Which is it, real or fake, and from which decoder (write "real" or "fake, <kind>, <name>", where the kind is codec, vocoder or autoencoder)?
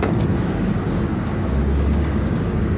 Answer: fake, codec, DAC